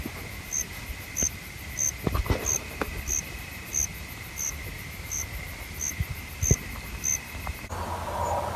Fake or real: real